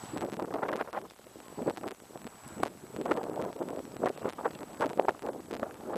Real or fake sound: real